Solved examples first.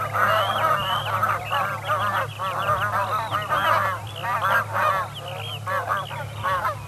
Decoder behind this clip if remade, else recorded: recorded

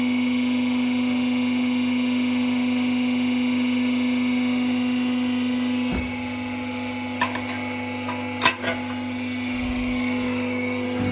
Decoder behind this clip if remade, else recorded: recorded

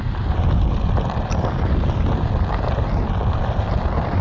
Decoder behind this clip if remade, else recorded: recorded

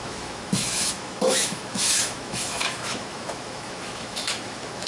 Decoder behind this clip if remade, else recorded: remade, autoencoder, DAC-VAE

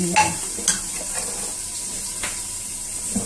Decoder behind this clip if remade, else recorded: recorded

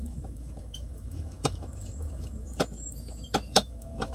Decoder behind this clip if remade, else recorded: remade, autoencoder, DAC-VAE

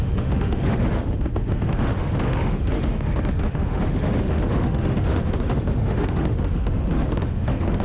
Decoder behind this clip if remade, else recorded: remade, autoencoder, DAC-VAE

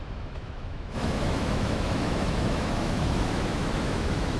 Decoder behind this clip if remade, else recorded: remade, autoencoder, DAC-VAE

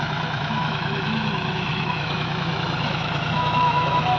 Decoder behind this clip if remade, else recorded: remade, autoencoder, DAC-VAE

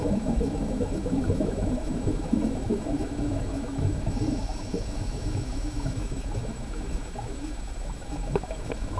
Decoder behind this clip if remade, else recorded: remade, autoencoder, DAC-VAE